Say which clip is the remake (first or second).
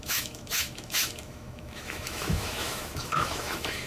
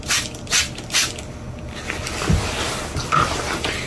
first